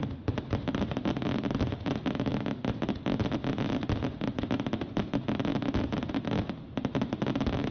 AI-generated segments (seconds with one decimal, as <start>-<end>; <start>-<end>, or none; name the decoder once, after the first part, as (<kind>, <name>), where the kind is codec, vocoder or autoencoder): none